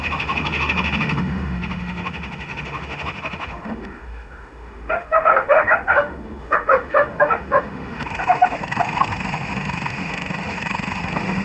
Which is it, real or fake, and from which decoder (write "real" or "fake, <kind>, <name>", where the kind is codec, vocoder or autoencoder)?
fake, autoencoder, DAC-VAE